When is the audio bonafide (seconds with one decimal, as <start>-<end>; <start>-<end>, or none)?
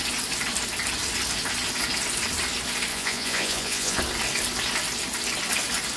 0.0-2.9; 4.0-6.0